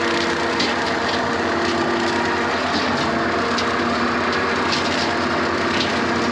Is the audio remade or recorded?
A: recorded